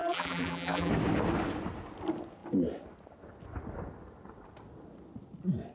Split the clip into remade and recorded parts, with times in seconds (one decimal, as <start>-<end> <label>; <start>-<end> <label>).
0.0-0.9 remade; 0.9-5.7 recorded